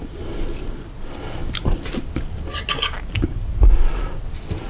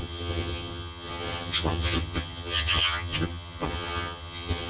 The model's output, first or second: second